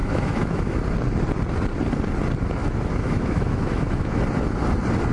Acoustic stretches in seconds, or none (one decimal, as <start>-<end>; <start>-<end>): 0.8-2.6; 4.2-5.1